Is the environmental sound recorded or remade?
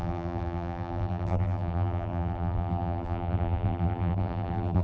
remade